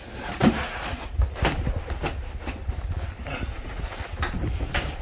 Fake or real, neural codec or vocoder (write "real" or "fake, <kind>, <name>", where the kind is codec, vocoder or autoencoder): real